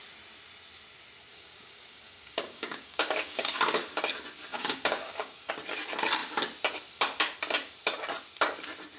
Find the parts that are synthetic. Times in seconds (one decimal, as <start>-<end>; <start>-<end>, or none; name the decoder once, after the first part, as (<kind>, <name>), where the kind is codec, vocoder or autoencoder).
1.3-3.6 (codec, DAC); 4.5-5.5